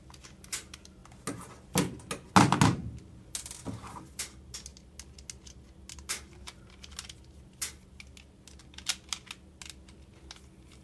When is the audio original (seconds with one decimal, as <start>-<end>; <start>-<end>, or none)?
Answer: 0.0-10.8